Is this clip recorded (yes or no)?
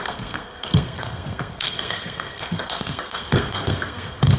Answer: no